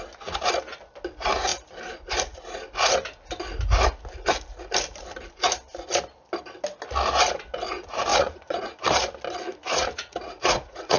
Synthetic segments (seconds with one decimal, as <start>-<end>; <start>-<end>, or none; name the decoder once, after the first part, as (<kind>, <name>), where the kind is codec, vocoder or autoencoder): 8.1-8.7 (vocoder, Vocos); 9.5-11.0